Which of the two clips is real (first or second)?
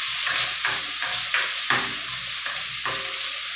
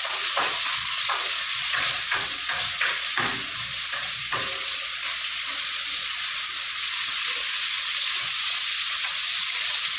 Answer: first